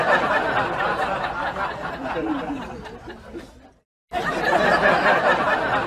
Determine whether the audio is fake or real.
real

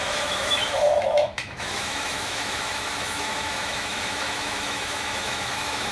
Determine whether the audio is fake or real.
fake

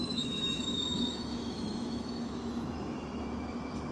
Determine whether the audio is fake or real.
fake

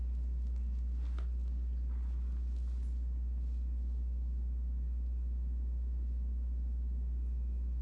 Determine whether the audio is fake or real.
real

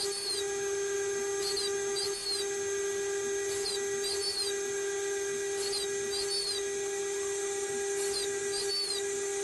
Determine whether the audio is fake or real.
real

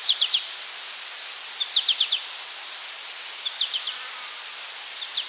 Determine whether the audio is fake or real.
real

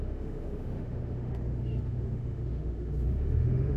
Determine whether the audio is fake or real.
fake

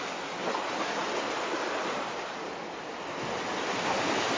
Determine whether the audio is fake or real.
real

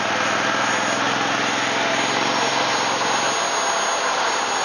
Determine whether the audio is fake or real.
real